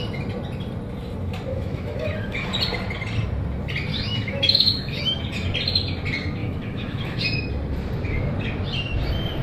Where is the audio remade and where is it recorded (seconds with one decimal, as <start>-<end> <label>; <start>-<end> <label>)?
0.0-1.5 recorded; 1.5-2.5 remade; 2.5-3.9 recorded; 3.9-5.2 remade; 5.2-6.4 recorded; 6.4-7.2 remade; 7.2-9.4 recorded